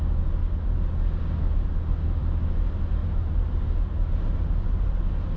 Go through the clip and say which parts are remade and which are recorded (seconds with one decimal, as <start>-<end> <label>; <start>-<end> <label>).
0.0-5.4 recorded